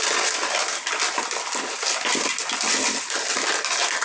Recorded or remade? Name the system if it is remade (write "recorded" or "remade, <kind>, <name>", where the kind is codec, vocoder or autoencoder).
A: recorded